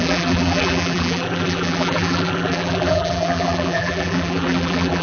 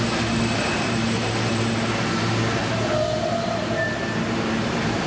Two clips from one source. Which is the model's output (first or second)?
first